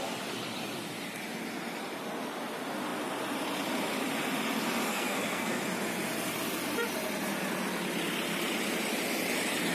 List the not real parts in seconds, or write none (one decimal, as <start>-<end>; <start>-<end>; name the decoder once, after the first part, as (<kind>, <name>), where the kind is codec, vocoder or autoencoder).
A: 4.9-5.6 (codec, SNAC)